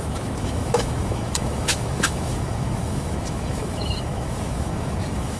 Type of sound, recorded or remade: remade